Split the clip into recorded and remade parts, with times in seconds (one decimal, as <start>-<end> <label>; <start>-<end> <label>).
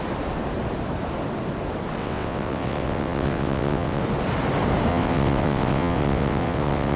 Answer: 0.0-2.0 recorded; 2.0-4.0 remade; 4.0-4.9 recorded; 4.9-7.0 remade